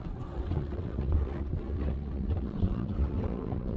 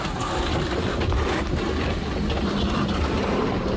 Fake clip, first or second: first